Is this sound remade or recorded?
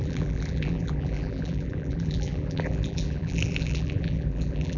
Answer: remade